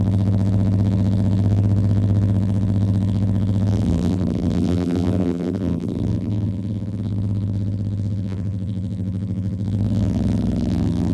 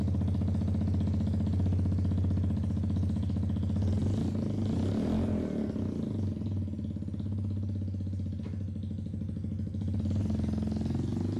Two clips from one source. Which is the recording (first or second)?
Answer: second